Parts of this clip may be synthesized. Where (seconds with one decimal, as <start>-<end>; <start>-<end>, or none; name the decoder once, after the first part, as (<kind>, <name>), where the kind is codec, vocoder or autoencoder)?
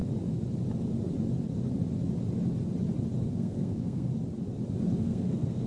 3.3-4.1 (codec, SNAC); 5.0-5.7